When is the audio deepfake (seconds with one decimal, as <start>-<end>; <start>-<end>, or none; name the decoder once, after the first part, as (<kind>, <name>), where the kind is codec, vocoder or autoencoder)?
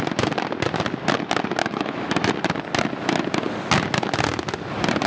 1.6-2.3 (autoencoder, DAC-VAE)